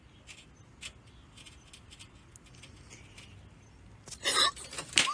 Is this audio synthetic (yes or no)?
no